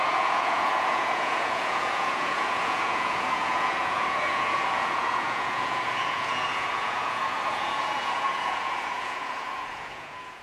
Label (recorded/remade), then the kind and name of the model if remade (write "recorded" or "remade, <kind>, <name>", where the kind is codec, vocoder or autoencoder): remade, vocoder, Vocos